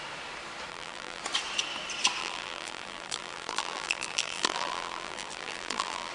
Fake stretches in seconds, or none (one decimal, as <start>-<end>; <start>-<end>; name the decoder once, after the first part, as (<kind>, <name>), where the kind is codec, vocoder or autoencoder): 0.7-1.2 (vocoder, BigVGAN v2); 2.2-6.1